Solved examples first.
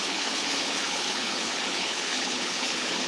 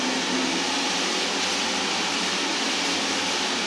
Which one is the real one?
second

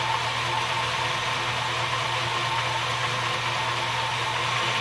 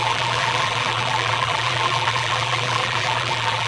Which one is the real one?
first